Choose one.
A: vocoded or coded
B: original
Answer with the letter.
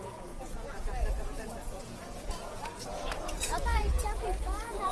A